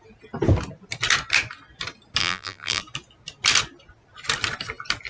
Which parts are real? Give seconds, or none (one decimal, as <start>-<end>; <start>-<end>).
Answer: 0.0-2.2; 2.8-5.1